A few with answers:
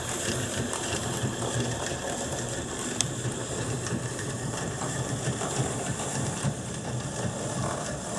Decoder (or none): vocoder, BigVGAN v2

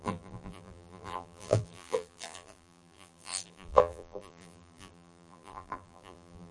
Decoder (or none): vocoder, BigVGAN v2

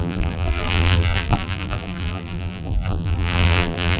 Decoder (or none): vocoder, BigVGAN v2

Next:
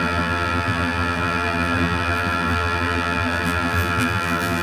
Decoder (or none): vocoder, BigVGAN v2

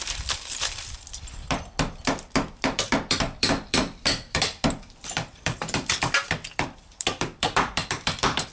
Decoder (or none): vocoder, BigVGAN v2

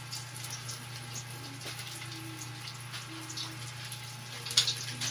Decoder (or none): none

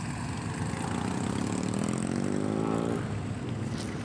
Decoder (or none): none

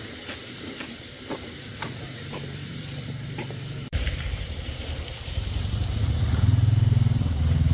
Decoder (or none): vocoder, BigVGAN v2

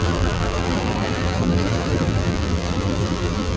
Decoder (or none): vocoder, BigVGAN v2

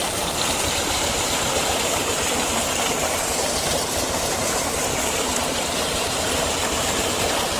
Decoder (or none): vocoder, BigVGAN v2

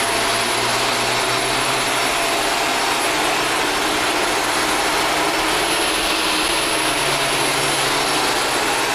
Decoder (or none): none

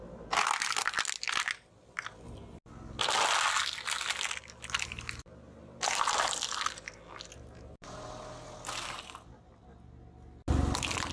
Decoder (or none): none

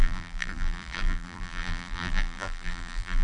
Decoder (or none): vocoder, BigVGAN v2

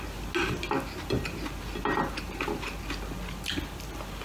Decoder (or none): none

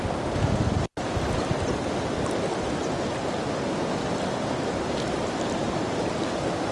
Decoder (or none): none